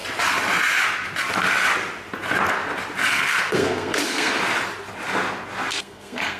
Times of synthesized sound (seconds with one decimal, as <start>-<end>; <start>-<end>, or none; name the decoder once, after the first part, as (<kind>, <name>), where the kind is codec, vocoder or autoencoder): 3.1-4.3 (codec, SNAC); 5.7-6.4